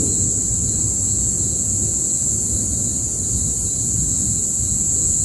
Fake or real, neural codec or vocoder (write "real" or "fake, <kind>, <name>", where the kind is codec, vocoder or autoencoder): real